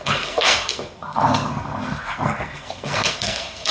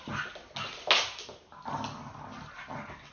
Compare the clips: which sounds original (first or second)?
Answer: second